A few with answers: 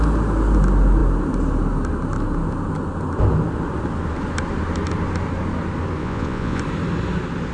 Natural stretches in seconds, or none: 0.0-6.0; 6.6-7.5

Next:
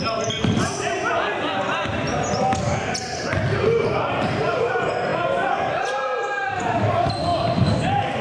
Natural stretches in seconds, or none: 0.0-8.2

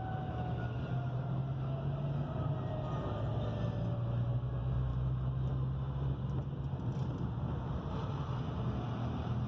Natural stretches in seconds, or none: 0.0-9.5

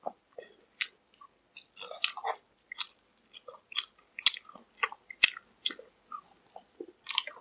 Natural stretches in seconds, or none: 0.0-7.4

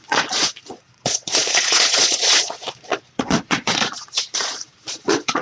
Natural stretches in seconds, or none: none